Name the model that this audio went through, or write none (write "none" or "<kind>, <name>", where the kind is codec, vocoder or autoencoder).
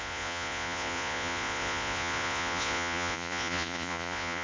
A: vocoder, Vocos